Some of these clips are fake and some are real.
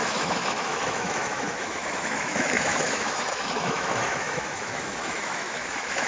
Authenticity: fake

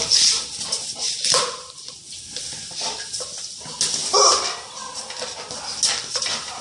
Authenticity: real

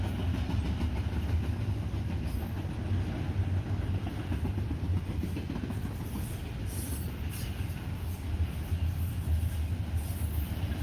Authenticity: real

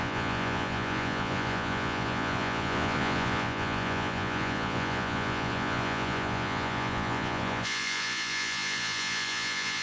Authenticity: fake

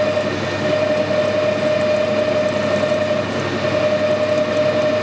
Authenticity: real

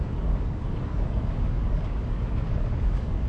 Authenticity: fake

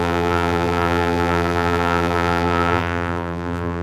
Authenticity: fake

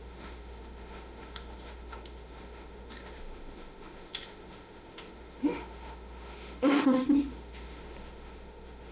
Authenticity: fake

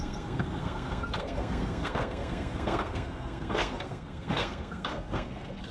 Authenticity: fake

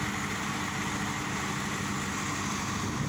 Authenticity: real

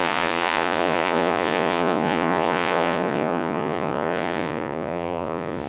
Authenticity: fake